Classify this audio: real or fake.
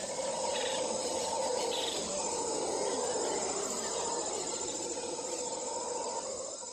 fake